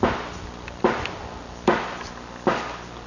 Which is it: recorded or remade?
recorded